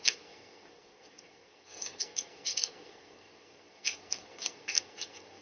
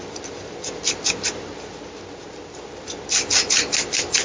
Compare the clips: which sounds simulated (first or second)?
first